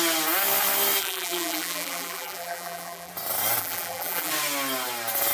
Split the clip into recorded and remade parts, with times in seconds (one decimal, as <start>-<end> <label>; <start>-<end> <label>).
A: 0.0-1.0 recorded; 1.0-3.1 remade; 3.1-3.6 recorded; 3.6-4.3 remade; 4.3-5.3 recorded